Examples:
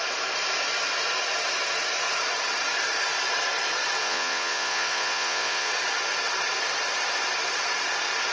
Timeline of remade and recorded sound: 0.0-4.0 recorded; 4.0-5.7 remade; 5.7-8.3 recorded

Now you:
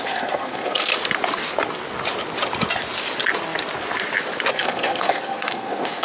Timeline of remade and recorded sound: 0.0-0.9 remade; 0.9-4.5 recorded; 4.5-6.0 remade

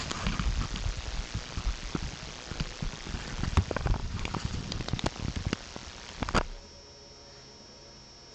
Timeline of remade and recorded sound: 0.0-4.0 recorded; 4.0-5.0 remade; 5.0-8.3 recorded

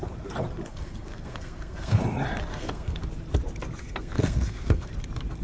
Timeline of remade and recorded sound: 0.0-0.7 recorded; 0.7-2.0 remade; 2.0-2.5 recorded; 2.5-3.0 remade; 3.0-3.8 recorded; 3.8-4.9 remade; 4.9-5.4 recorded